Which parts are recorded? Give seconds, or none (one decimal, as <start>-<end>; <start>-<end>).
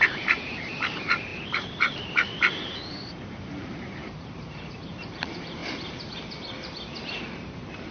5.6-7.3